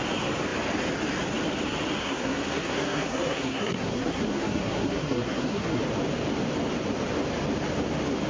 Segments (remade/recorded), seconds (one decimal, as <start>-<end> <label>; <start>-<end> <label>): 0.0-2.0 recorded; 2.0-5.8 remade; 5.8-8.3 recorded